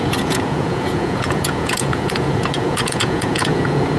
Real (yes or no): no